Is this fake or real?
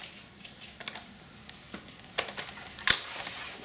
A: real